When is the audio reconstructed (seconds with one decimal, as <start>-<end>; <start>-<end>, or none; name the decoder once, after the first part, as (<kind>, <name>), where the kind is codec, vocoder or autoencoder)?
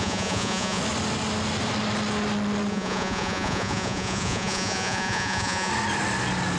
0.0-0.8 (vocoder, Vocos); 2.7-5.7